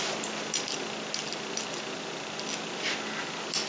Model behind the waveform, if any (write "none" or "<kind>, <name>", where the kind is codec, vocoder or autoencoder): none